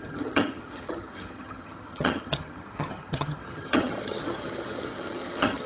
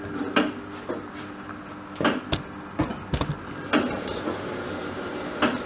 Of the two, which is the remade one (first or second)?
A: first